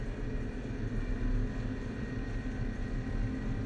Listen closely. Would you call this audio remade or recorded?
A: recorded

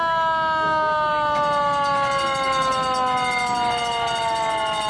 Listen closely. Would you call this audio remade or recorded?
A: recorded